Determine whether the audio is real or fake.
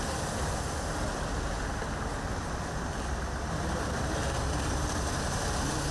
real